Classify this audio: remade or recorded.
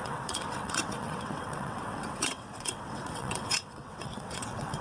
remade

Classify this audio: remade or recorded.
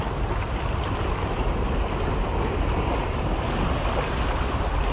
recorded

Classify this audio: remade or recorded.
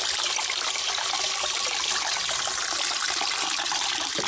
recorded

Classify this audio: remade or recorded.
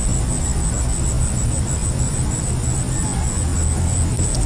recorded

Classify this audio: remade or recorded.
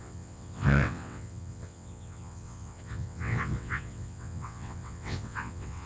remade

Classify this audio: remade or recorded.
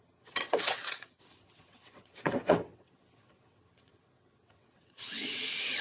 remade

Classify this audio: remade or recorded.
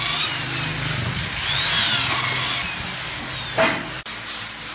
recorded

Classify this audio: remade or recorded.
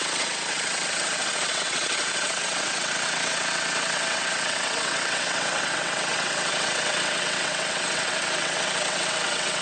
remade